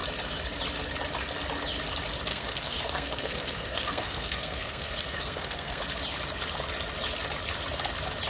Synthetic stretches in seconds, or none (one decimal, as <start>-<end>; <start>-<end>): 2.3-5.8